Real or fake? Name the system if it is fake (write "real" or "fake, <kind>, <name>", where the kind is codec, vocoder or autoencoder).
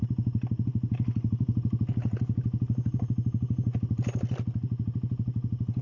real